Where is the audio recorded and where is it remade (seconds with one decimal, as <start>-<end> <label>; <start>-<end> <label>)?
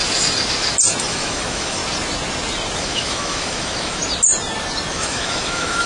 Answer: 0.0-1.0 recorded; 1.0-1.8 remade; 1.8-2.8 recorded; 2.8-4.0 remade; 4.0-4.9 recorded; 4.9-5.9 remade